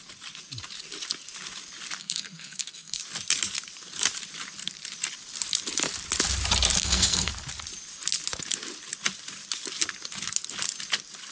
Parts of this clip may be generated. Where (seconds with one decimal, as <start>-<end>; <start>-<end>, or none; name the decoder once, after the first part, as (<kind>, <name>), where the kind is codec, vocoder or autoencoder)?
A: 2.0-3.0 (codec, SNAC); 6.8-7.3